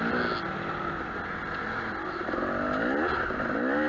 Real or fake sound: real